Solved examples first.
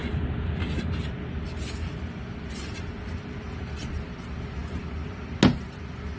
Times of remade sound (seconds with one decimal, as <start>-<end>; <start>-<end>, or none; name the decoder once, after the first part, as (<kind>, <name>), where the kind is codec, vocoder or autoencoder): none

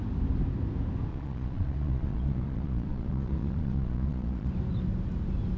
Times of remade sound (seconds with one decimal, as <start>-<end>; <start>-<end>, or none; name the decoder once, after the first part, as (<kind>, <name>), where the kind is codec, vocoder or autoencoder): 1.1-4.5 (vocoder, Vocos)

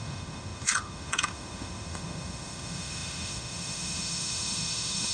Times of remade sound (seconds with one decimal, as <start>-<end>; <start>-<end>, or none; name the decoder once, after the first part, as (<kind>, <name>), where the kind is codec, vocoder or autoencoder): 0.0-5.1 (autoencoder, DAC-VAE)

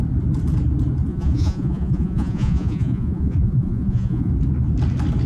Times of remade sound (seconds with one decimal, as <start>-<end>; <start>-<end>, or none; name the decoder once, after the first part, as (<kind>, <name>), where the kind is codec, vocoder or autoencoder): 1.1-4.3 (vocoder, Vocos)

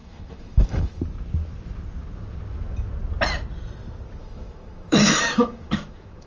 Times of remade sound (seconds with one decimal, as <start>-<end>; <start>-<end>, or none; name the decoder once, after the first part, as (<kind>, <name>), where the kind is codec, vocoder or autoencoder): 0.0-1.0 (autoencoder, DAC-VAE); 4.2-6.3